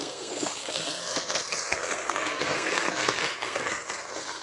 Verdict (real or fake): fake